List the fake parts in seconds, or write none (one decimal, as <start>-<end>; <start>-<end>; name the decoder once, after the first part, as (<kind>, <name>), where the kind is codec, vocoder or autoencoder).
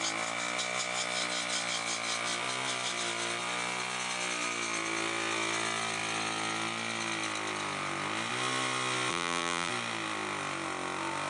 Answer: 9.1-9.7 (vocoder, BigVGAN v2)